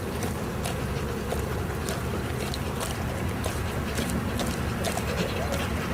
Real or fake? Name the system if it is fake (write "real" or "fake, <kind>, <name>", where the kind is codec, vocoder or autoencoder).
real